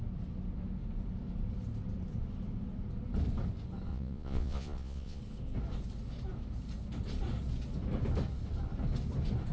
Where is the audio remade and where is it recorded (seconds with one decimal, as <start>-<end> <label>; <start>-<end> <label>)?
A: 0.0-3.9 recorded; 3.9-5.2 remade; 5.2-9.5 recorded